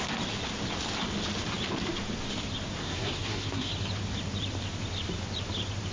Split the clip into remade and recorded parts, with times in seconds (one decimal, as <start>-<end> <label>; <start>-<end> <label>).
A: 0.0-2.8 recorded; 2.8-3.7 remade; 3.7-5.9 recorded